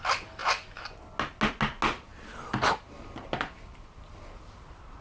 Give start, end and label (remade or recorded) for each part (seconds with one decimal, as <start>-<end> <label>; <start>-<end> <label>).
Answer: 0.0-5.0 recorded